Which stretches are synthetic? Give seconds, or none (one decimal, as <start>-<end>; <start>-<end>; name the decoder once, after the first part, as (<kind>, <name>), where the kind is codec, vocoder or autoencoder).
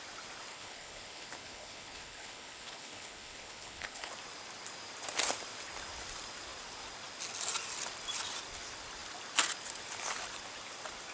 0.5-4.1 (codec, HILCodec)